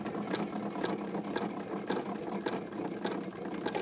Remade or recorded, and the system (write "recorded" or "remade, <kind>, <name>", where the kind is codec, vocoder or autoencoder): recorded